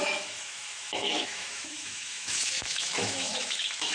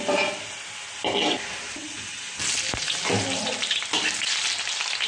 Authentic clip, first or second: second